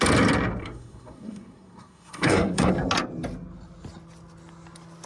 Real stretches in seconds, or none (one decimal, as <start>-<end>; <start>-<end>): 0.0-0.6; 2.7-5.1